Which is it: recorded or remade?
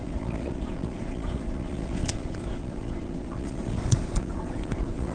remade